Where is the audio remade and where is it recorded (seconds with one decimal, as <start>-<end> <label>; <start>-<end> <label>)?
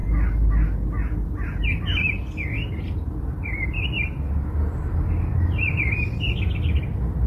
0.0-7.3 recorded